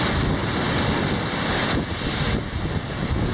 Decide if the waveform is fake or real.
real